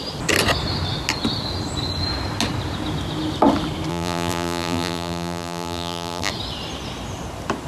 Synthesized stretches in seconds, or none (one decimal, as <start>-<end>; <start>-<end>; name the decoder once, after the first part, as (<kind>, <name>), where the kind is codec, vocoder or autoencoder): 3.9-6.3 (vocoder, BigVGAN v2)